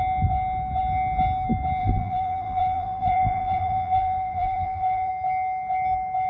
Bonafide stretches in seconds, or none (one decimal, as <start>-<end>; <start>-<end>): 0.0-1.8; 5.1-6.3

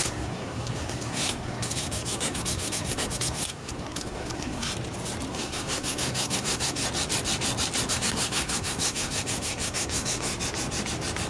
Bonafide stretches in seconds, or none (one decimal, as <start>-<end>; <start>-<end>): 4.7-5.3; 6.8-7.9; 10.3-11.3